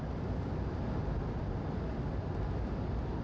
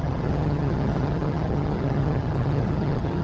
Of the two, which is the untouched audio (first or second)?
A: first